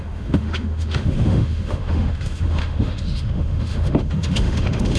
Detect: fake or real fake